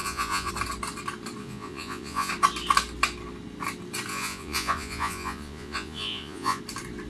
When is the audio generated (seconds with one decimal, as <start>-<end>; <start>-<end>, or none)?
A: 0.0-0.5; 1.4-2.3; 4.1-6.6